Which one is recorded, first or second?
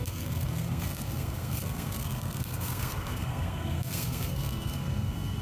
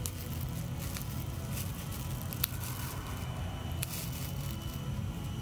second